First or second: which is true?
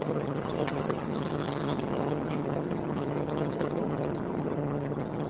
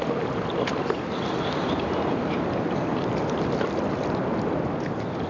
second